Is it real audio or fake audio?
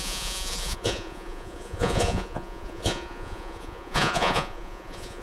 fake